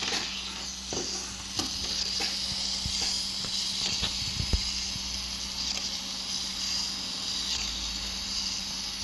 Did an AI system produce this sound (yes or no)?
no